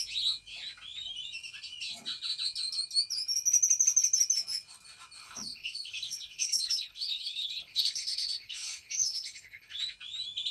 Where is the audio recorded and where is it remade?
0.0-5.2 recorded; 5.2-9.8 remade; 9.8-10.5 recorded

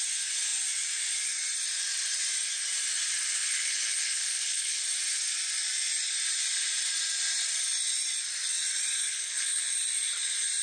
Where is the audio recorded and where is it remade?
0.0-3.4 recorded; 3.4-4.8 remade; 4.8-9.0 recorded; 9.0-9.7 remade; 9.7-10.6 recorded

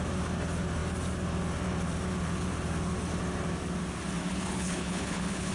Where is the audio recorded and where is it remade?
0.0-4.3 recorded; 4.3-5.5 remade

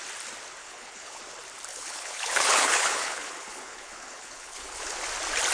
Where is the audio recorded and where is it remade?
0.0-0.6 recorded; 0.6-1.2 remade; 1.2-1.7 recorded; 1.7-5.0 remade; 5.0-5.5 recorded

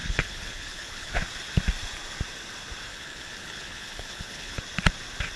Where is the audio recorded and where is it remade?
0.0-1.1 remade; 1.1-2.9 recorded; 2.9-4.6 remade; 4.6-5.4 recorded

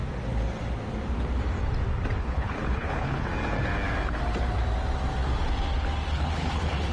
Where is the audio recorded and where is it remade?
0.0-2.2 recorded; 2.2-3.3 remade; 3.3-6.1 recorded; 6.1-6.9 remade

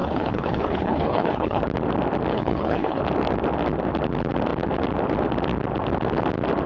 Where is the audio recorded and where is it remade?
0.0-1.6 remade; 1.6-2.3 recorded; 2.3-3.0 remade; 3.0-6.7 recorded